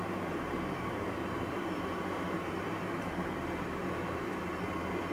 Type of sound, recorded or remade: remade